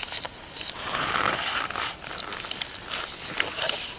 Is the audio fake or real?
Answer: real